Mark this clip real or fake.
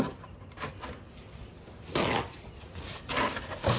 real